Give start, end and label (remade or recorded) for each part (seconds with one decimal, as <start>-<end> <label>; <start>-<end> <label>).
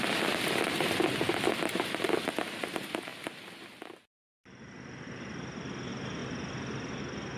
0.0-7.4 recorded